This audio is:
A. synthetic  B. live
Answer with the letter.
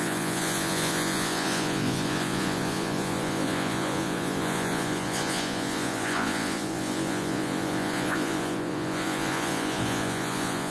A